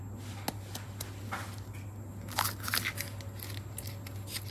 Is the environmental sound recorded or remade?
recorded